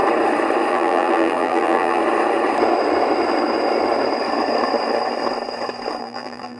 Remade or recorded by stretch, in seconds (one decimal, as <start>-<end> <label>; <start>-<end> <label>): 0.0-0.7 recorded; 0.7-2.0 remade; 2.0-6.0 recorded; 6.0-6.6 remade

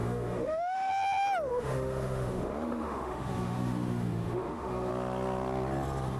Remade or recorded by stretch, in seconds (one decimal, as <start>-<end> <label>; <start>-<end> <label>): 0.0-0.9 remade; 0.9-1.5 recorded; 1.5-4.9 remade; 4.9-6.2 recorded